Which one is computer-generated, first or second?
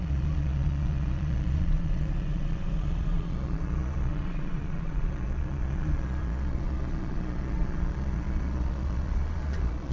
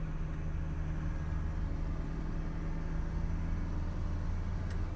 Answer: first